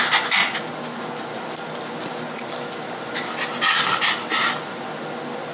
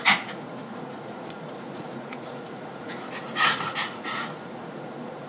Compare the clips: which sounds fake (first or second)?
second